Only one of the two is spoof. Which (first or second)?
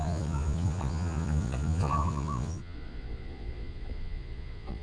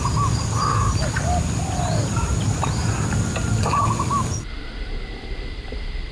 first